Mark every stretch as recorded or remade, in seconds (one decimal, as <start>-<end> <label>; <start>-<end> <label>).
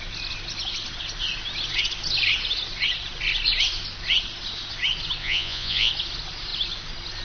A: 0.0-5.2 recorded; 5.2-5.9 remade; 5.9-7.2 recorded